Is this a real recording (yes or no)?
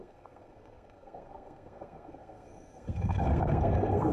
no